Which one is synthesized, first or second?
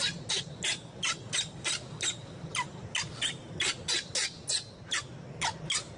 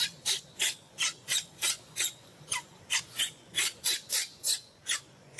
second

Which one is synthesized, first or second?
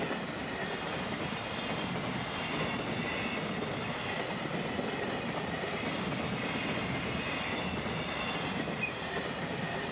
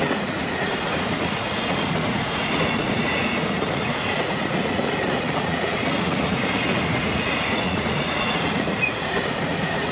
second